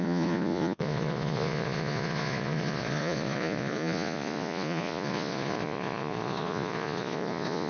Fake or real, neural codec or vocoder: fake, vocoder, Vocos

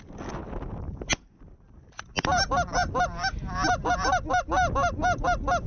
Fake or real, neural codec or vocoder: real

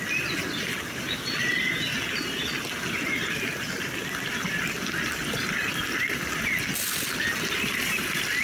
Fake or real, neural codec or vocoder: real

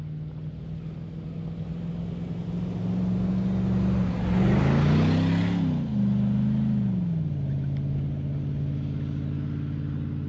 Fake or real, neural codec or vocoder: real